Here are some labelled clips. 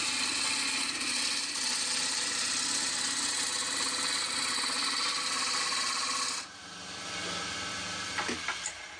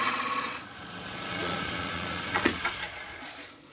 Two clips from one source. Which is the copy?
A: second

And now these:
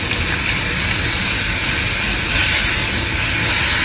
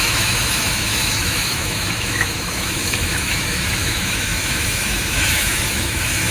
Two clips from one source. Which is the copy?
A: second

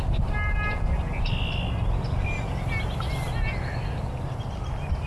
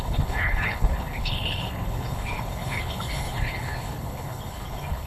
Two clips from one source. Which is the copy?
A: second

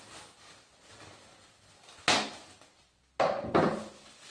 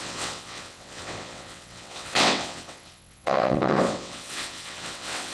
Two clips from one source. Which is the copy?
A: second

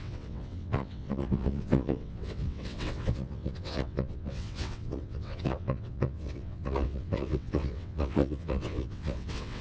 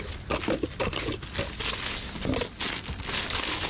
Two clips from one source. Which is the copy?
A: first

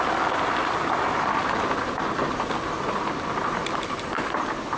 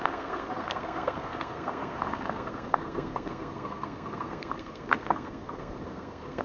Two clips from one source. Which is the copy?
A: second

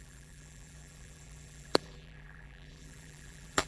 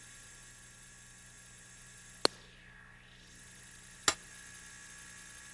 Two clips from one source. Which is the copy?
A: first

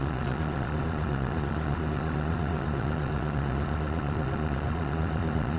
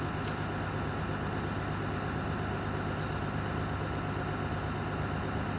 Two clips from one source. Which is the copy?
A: first